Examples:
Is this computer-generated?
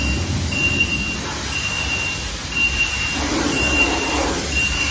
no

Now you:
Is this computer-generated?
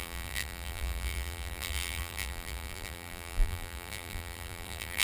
yes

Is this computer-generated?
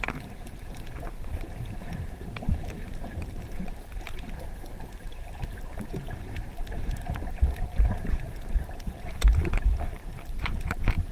yes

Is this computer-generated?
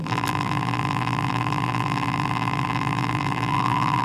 yes